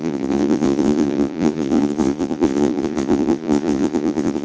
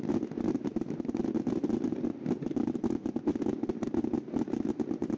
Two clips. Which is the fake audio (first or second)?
first